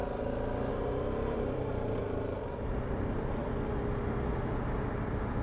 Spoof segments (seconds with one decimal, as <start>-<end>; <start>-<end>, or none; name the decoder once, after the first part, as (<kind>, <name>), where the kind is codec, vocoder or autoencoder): 0.7-3.4 (vocoder, BigVGAN v2)